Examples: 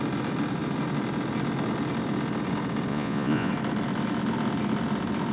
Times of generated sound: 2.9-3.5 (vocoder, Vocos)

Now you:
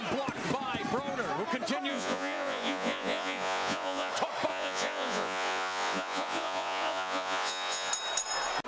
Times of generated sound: 1.9-4.1 (vocoder, Vocos); 4.5-7.9

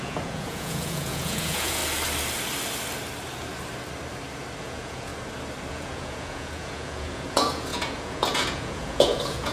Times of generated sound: 0.0-1.8 (vocoder, Vocos); 4.6-5.1; 5.7-9.5

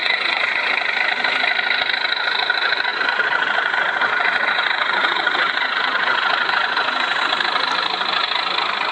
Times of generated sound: 0.0-0.7 (vocoder, Vocos); 2.9-7.2

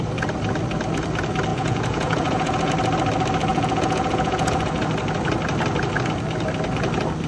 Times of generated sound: 1.5-2.7 (vocoder, Vocos); 3.5-4.9

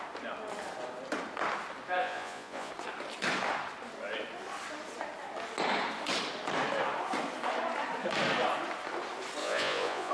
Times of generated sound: 2.0-2.7 (vocoder, Vocos); 9.4-10.1

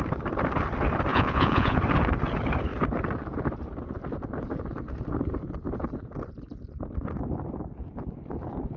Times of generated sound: 1.1-1.8 (vocoder, Vocos)